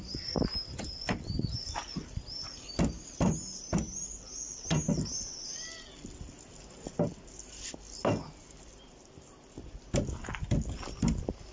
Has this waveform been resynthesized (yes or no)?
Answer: no